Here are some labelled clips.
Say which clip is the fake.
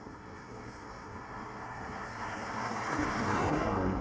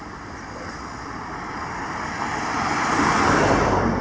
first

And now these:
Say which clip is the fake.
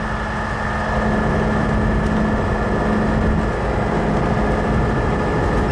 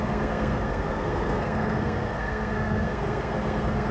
second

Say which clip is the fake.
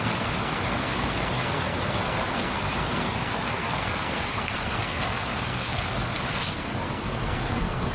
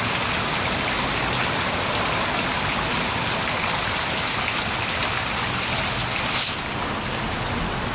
first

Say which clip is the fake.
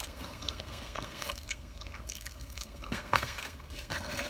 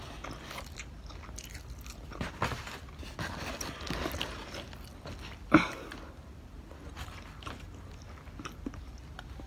first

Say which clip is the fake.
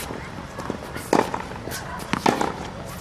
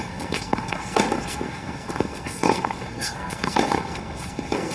second